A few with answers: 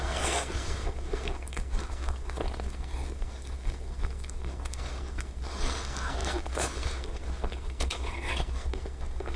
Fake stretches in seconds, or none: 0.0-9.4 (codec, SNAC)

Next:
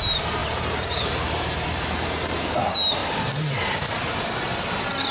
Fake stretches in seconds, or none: 0.4-2.4 (vocoder, BigVGAN v2); 3.0-5.1

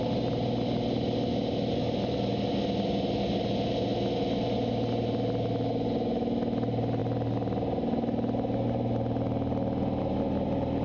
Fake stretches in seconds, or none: none

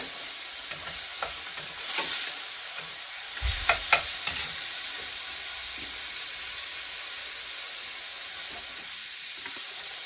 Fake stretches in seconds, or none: 0.0-7.2 (vocoder, BigVGAN v2); 8.5-10.1

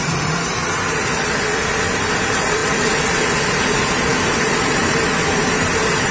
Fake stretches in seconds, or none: 0.0-0.6 (vocoder, BigVGAN v2); 2.0-6.1